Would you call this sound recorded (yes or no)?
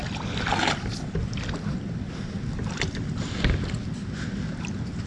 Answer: yes